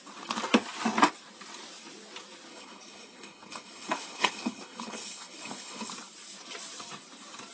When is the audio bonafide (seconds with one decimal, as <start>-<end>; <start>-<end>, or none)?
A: 0.0-2.5; 5.9-7.5